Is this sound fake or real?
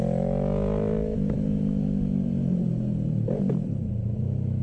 real